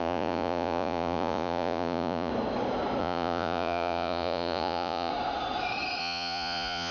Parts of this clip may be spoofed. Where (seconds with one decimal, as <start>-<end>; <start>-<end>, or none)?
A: 0.0-2.3; 3.0-5.1; 6.0-6.9